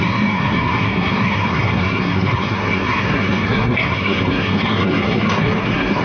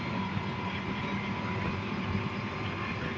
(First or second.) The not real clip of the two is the first